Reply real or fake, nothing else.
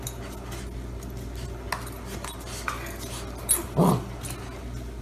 real